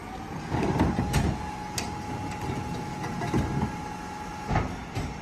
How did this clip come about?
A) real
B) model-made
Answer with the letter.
A